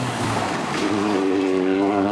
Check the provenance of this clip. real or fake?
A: fake